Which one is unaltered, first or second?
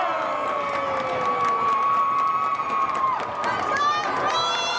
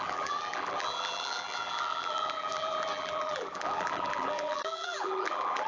first